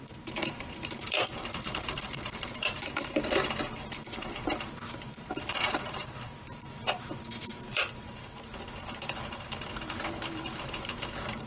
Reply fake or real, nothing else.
fake